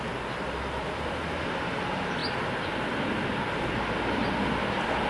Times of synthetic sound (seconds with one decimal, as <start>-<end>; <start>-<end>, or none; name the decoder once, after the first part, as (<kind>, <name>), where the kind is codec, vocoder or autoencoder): none